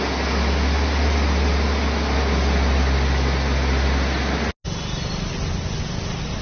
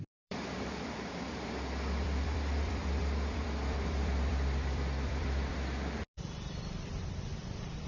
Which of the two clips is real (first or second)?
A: first